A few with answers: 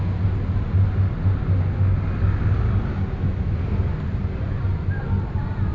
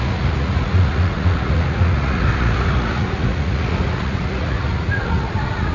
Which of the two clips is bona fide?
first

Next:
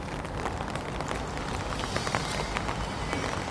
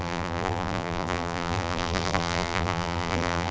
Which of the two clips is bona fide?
first